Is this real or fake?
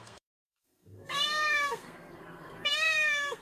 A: fake